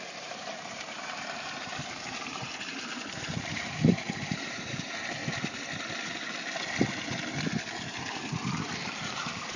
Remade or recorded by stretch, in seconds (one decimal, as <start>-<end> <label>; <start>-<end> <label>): 0.0-5.2 remade; 5.2-7.8 recorded; 7.8-9.6 remade